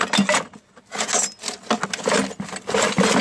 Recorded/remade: recorded